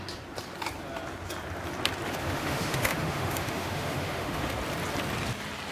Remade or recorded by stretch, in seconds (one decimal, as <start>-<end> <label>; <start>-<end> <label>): 0.0-2.2 recorded; 2.2-4.5 remade; 4.5-5.7 recorded